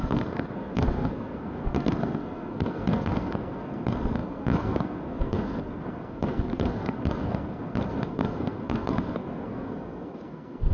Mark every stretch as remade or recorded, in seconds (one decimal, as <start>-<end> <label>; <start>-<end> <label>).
0.0-10.7 remade